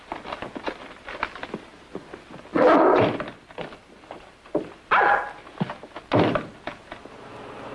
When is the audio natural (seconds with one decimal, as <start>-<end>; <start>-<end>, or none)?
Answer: 0.0-2.5; 5.0-7.7